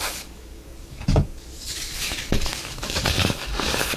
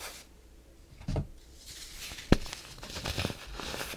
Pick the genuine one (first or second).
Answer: second